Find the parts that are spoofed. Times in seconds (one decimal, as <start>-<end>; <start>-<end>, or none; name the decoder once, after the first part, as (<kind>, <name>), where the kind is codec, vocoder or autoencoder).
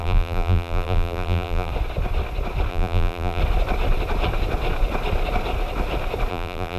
0.0-1.7 (vocoder, BigVGAN v2); 2.7-3.4; 6.3-6.8